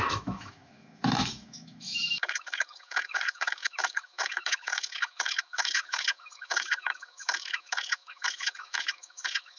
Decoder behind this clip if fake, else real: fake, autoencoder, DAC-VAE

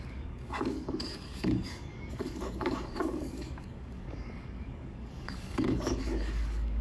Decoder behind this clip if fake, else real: fake, codec, DAC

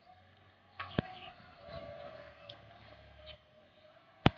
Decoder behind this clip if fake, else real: fake, codec, SNAC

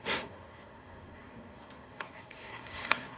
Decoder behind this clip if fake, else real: fake, codec, SNAC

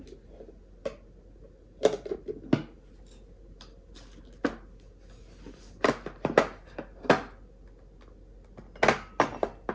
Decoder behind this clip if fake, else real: real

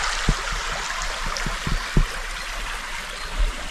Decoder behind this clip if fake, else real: real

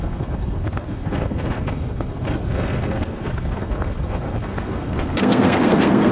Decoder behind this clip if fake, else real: fake, codec, SNAC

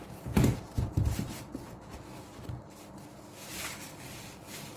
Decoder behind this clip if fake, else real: real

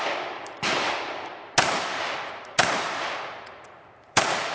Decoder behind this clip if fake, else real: real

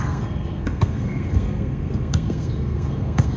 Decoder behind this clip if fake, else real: fake, codec, SNAC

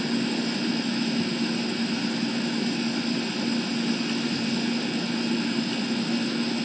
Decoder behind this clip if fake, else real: real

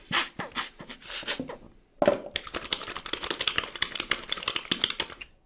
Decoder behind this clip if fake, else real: real